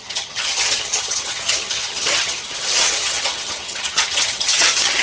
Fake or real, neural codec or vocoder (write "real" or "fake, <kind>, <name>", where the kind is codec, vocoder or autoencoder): fake, vocoder, HiFi-GAN